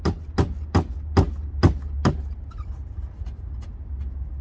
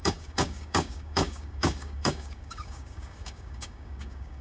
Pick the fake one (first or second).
second